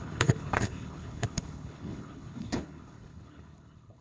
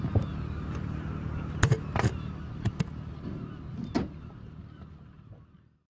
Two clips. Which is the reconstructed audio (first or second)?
first